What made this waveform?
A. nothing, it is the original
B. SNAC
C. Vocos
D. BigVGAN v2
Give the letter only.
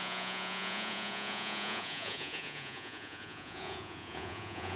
C